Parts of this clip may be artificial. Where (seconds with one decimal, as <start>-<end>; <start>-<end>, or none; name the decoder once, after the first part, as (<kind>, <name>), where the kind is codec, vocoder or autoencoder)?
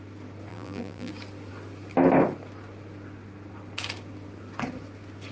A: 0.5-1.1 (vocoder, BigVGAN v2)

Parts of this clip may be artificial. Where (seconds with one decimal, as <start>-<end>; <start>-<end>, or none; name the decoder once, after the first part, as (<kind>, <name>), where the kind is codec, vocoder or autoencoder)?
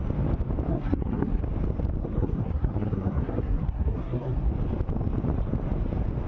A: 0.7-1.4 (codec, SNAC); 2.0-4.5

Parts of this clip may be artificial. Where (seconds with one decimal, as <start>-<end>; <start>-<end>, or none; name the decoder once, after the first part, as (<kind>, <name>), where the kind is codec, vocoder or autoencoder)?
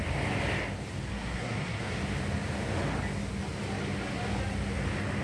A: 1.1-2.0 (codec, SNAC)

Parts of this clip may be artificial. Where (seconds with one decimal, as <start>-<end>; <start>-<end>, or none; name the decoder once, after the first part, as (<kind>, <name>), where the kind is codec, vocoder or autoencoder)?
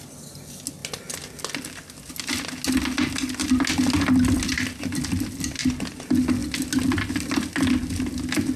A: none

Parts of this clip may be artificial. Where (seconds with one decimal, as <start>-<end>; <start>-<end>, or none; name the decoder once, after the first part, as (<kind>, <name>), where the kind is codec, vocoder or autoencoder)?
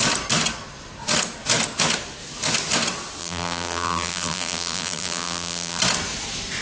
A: 3.2-5.8 (vocoder, BigVGAN v2)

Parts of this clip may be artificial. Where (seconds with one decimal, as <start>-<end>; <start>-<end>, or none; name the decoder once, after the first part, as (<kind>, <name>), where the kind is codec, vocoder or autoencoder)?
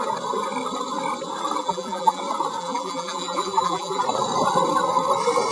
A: 1.6-2.2 (vocoder, BigVGAN v2); 2.6-4.0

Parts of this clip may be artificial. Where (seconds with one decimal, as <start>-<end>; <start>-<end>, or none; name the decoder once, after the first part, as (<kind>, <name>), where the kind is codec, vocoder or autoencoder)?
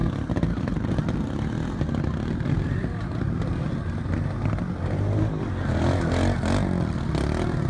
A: none